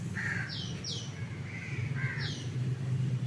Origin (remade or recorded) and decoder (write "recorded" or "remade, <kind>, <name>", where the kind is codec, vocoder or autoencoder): recorded